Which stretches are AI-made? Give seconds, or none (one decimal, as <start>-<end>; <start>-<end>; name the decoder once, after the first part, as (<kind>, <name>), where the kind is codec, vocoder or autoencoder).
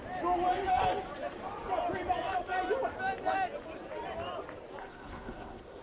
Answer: 4.8-5.8 (codec, SNAC)